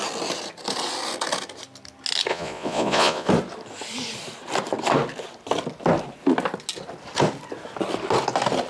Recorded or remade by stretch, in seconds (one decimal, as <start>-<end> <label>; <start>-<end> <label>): 0.0-2.3 recorded; 2.3-3.3 remade; 3.3-8.7 recorded